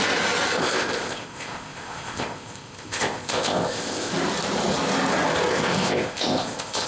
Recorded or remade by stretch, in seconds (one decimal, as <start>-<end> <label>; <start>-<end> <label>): 0.0-0.6 recorded; 0.6-4.1 remade; 4.1-5.5 recorded; 5.5-6.9 remade